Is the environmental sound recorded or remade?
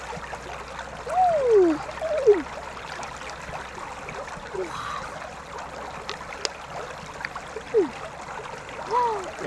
recorded